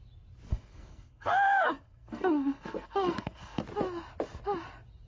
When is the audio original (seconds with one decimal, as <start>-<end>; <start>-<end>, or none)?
0.0-0.5; 3.6-5.1